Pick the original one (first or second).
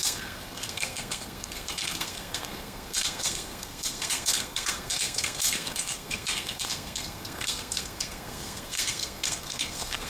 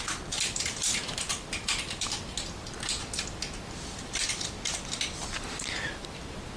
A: second